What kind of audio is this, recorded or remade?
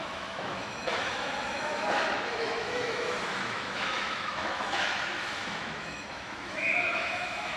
remade